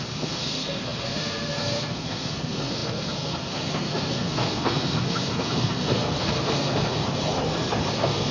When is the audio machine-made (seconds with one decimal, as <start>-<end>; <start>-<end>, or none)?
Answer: 0.0-7.0; 7.9-8.3